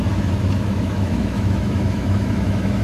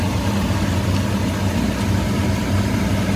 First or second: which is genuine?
second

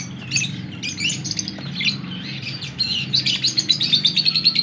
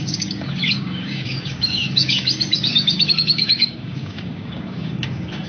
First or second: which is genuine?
first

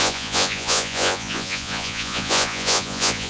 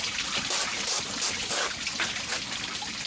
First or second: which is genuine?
second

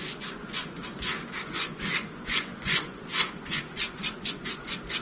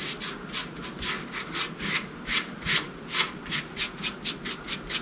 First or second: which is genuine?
second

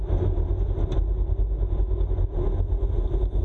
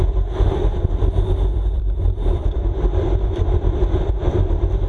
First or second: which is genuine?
first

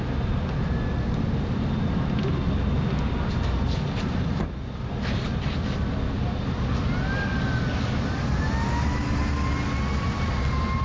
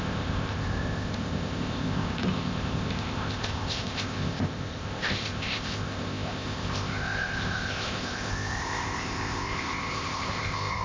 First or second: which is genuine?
first